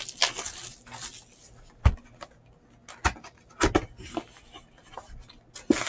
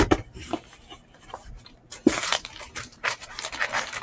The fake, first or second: second